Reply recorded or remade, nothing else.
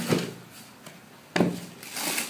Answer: recorded